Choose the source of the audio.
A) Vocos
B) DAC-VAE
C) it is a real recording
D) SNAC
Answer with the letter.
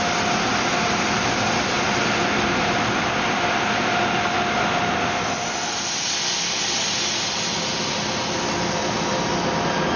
C